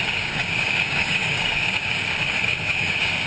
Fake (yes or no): yes